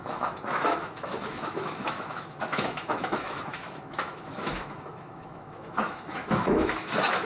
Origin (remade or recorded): remade